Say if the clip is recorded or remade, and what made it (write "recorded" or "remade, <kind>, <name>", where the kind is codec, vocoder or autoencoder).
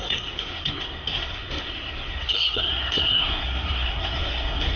remade, codec, SNAC